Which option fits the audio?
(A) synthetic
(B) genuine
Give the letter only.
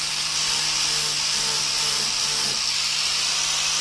B